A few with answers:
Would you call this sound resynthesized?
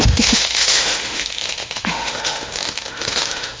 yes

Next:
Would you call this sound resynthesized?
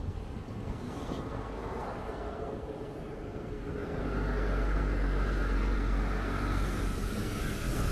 yes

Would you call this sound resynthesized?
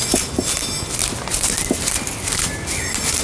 no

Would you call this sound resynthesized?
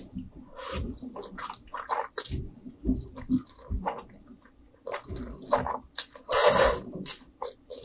no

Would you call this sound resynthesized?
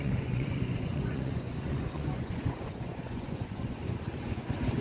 yes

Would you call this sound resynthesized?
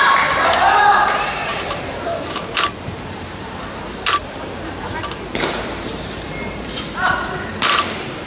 yes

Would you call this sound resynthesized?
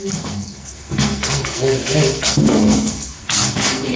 yes